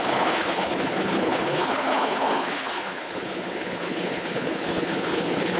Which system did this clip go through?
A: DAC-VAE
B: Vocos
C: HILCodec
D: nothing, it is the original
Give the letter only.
C